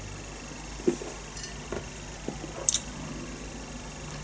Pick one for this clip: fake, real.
real